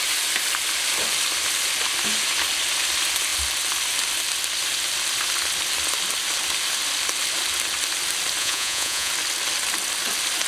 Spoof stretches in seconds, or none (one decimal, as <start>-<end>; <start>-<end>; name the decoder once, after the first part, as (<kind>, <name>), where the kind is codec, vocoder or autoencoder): 8.4-9.1 (vocoder, Vocos)